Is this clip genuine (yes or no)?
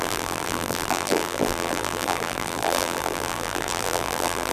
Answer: no